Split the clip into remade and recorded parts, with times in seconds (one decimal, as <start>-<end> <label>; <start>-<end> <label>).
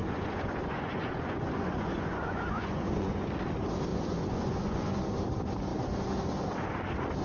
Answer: 0.0-3.3 remade; 3.3-3.9 recorded; 3.9-5.0 remade; 5.0-7.2 recorded